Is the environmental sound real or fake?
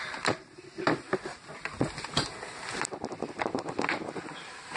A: fake